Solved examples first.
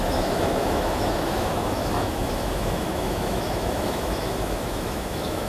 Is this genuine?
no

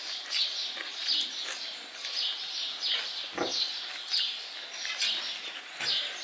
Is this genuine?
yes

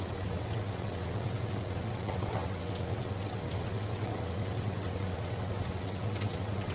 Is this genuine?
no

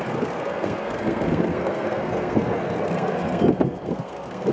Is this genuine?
no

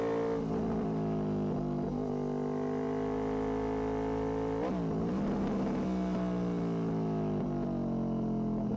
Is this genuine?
yes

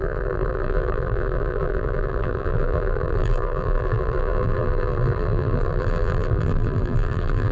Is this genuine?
no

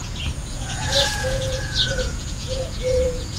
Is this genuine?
no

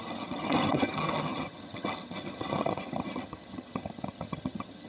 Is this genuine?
no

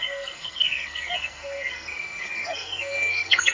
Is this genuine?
no